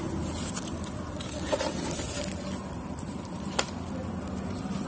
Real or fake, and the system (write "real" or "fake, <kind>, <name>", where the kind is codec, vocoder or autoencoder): real